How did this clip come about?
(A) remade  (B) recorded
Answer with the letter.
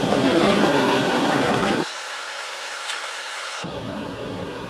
A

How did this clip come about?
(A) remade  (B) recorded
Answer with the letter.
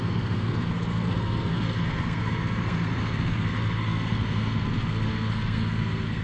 A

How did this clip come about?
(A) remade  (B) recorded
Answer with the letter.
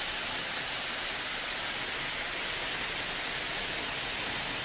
B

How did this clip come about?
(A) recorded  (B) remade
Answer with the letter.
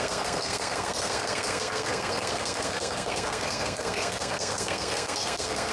B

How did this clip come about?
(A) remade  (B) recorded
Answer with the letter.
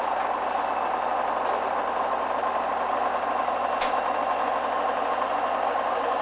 B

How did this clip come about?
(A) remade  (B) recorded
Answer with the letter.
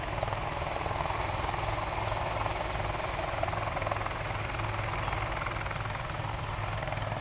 B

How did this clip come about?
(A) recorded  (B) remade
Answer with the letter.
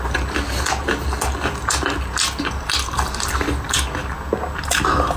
A